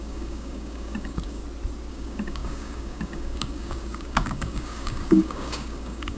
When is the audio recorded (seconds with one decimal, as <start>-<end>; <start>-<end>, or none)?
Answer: 1.4-1.9